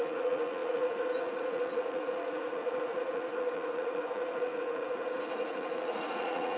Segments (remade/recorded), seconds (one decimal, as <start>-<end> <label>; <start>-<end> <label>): 0.0-6.6 remade